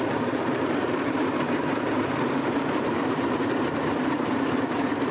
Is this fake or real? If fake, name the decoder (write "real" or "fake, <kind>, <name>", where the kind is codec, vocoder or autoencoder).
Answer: fake, vocoder, BigVGAN v2